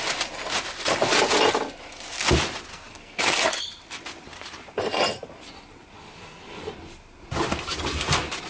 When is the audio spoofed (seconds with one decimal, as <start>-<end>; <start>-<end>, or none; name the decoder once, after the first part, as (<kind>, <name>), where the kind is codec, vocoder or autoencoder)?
2.7-3.2 (codec, SNAC)

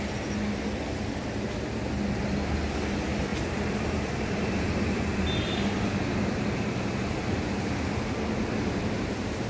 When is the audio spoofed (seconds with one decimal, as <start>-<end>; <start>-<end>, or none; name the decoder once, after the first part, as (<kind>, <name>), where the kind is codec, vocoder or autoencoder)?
3.3-4.9 (vocoder, BigVGAN v2)

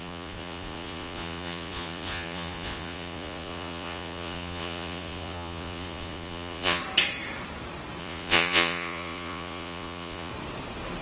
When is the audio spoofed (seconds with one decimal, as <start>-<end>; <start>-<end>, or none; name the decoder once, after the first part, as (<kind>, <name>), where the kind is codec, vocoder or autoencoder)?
0.0-6.8 (vocoder, Vocos); 8.0-10.3

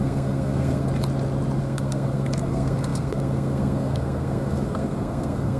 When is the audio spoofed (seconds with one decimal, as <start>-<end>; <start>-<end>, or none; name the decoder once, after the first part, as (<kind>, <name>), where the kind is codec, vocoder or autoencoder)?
0.0-0.9 (codec, SNAC); 1.6-5.6

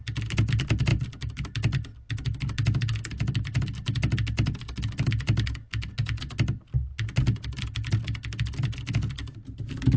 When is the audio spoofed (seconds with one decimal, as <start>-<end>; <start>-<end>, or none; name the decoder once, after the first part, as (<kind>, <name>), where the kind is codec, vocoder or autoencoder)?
none

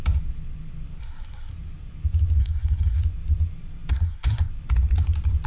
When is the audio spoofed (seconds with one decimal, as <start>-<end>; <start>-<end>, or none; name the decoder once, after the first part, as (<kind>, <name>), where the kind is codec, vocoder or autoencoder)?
1.0-1.5 (codec, SNAC); 2.4-3.0; 3.9-4.5